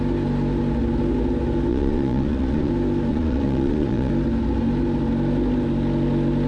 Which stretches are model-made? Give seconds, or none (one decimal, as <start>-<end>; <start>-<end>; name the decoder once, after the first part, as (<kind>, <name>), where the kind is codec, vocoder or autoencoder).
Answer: 1.7-2.7 (vocoder, Vocos); 3.1-4.1